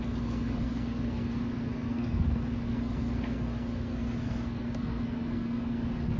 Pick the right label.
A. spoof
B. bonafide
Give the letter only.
A